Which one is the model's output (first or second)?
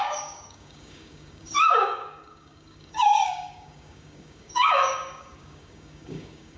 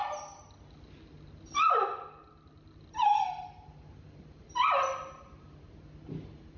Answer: first